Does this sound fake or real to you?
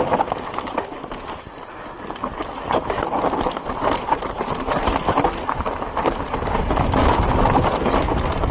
real